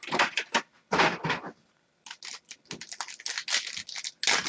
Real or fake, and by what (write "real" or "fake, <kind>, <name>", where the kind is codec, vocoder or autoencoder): real